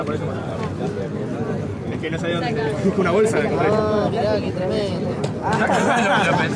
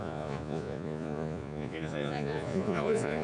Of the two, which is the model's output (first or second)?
second